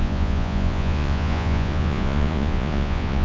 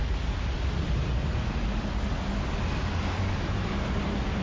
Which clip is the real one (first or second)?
second